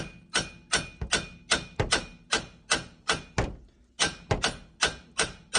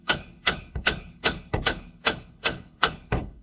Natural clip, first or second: first